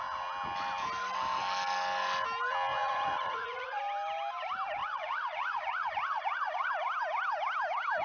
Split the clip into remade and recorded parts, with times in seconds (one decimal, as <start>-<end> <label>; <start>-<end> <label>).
0.0-2.7 recorded; 2.7-3.8 remade; 3.8-4.8 recorded; 4.8-6.7 remade; 6.7-8.0 recorded